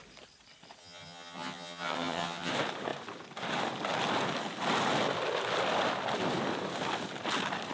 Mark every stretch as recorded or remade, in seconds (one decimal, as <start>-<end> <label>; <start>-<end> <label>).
0.0-0.8 recorded; 0.8-2.5 remade; 2.5-7.7 recorded